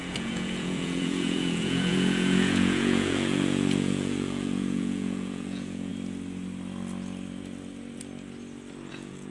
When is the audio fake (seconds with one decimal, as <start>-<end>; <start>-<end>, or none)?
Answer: 0.0-5.9; 8.9-9.3